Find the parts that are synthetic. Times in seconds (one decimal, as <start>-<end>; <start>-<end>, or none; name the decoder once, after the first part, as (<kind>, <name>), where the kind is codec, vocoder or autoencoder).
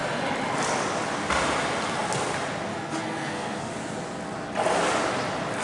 2.7-3.7 (codec, SNAC)